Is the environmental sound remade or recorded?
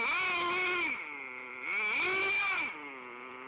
recorded